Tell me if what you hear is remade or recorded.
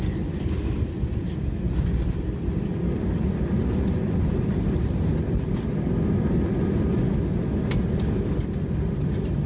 recorded